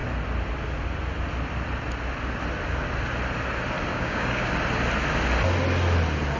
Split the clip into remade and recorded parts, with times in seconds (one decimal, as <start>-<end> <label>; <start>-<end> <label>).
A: 0.0-3.9 recorded; 3.9-4.5 remade; 4.5-6.4 recorded